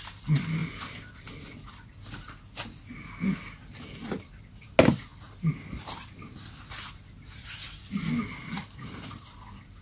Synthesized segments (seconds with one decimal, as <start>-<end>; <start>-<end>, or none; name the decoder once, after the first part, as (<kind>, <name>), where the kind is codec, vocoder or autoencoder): 8.4-9.2 (vocoder, BigVGAN v2)